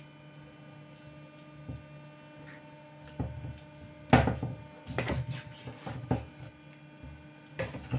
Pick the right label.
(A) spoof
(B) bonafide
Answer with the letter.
B